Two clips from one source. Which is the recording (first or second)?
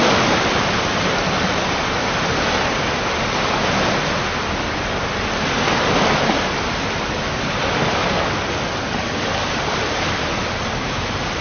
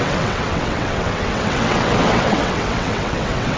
first